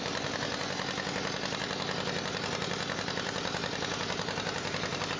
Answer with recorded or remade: recorded